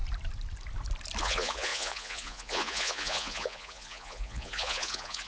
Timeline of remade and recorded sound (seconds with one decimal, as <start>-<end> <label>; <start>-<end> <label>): 0.0-1.2 recorded; 1.2-5.3 remade

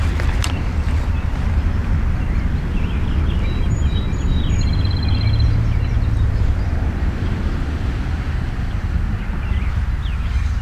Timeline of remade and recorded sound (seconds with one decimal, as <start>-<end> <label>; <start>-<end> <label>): 0.0-10.6 recorded

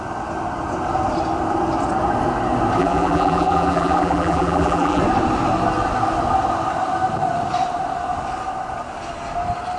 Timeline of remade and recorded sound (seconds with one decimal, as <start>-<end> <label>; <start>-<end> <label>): 0.0-2.8 recorded; 2.8-5.0 remade; 5.0-9.8 recorded

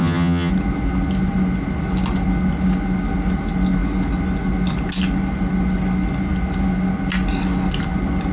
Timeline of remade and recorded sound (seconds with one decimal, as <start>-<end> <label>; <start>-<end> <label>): 0.0-0.5 remade; 0.5-8.3 recorded

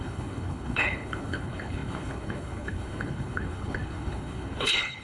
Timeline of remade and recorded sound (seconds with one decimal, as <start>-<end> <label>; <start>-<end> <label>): 0.0-5.0 remade

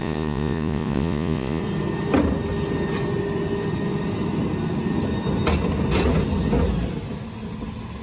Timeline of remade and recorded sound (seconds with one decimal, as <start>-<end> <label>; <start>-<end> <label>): 0.0-1.6 remade; 1.6-8.0 recorded